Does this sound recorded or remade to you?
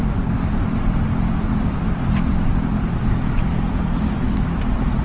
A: remade